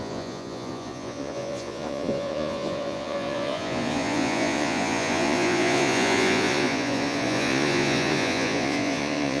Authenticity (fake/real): fake